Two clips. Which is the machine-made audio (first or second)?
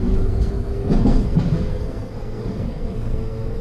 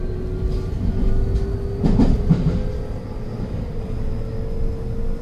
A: first